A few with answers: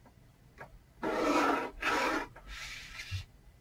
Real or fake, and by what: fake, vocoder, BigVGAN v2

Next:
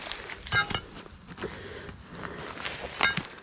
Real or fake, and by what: real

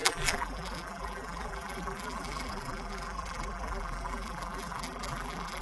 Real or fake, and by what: fake, vocoder, BigVGAN v2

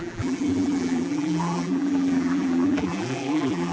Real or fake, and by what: fake, vocoder, BigVGAN v2